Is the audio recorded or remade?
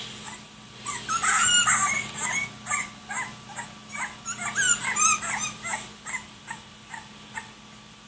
recorded